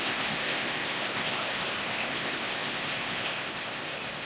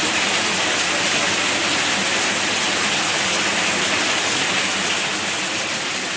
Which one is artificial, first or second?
first